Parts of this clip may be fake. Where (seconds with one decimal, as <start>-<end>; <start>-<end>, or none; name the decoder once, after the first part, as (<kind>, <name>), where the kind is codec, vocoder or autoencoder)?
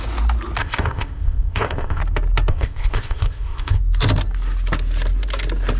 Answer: 0.6-2.0 (codec, ZipCodec); 2.5-3.8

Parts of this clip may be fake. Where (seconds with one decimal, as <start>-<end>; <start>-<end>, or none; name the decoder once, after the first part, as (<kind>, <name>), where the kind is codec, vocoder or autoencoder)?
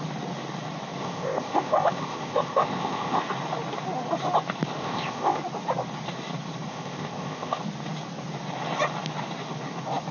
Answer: 1.0-3.2 (codec, ZipCodec); 4.8-5.4; 6.7-7.6